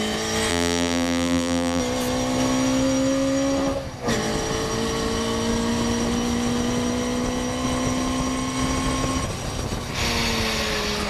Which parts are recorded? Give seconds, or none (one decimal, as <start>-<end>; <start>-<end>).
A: 0.0-0.5; 1.8-11.1